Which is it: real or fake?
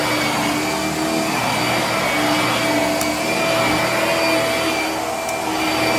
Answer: real